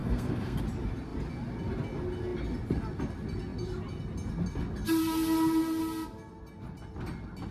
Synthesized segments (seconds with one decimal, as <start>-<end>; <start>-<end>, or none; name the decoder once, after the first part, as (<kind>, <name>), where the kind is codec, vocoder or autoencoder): 0.0-0.6 (codec, SNAC)